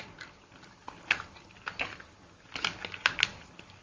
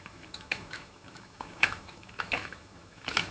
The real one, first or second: first